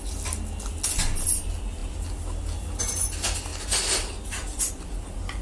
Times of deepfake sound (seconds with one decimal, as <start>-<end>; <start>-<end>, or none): none